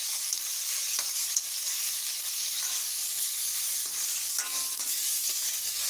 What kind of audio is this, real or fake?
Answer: fake